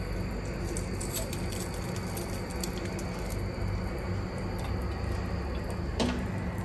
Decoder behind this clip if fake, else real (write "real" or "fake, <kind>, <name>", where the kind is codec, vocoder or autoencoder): real